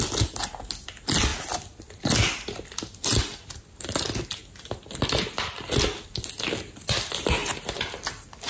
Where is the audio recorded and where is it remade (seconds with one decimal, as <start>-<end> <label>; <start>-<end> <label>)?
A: 0.0-8.5 recorded